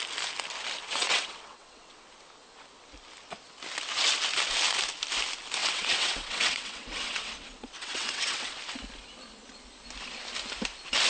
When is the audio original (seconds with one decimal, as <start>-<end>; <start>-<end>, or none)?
0.0-0.8; 1.9-5.6; 8.5-11.1